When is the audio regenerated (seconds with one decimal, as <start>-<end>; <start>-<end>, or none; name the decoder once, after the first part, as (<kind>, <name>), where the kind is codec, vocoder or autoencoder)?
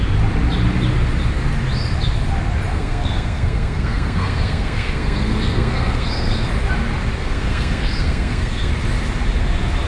2.7-6.5 (codec, SNAC); 7.2-8.7